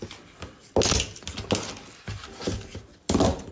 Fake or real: real